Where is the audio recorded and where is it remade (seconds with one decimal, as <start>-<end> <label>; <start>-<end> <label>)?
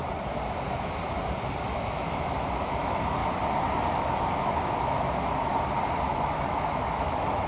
0.0-1.6 recorded; 1.6-3.2 remade; 3.2-3.9 recorded; 3.9-5.5 remade; 5.5-6.1 recorded; 6.1-7.5 remade